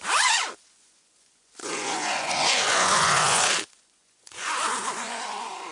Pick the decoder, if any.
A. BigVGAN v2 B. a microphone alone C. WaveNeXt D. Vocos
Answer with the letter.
D